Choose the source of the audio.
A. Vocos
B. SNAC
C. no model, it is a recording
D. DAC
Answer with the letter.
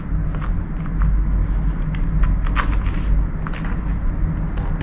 C